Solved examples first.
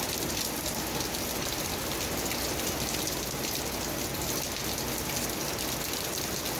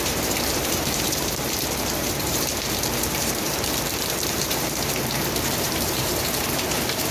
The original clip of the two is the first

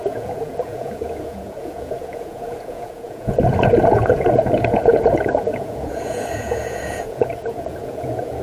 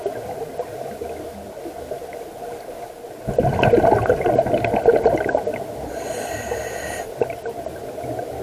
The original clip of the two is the second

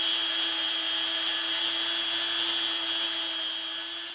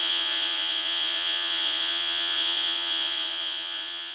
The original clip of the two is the first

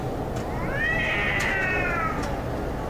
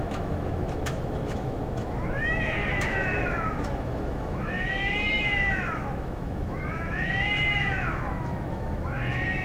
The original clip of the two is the first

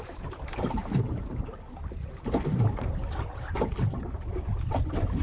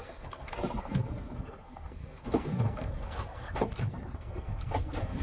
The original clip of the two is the first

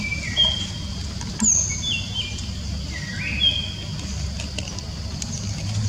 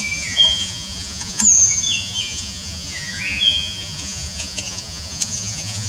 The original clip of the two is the first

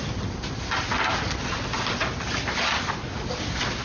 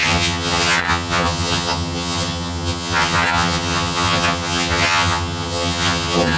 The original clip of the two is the first